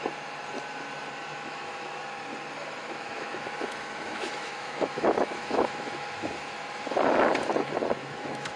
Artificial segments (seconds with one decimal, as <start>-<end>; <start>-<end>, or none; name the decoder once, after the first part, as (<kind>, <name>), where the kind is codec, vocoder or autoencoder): 1.3-2.0 (autoencoder, DAC-VAE); 2.8-6.3; 8.0-8.6